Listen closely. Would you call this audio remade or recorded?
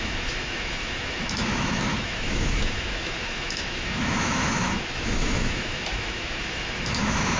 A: remade